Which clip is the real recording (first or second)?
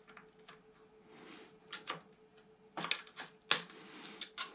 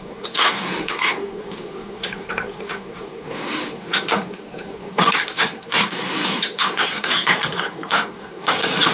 first